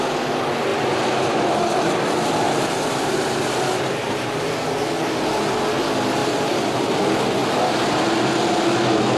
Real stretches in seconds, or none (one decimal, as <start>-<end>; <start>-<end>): 0.0-0.7; 4.3-6.2; 7.0-9.2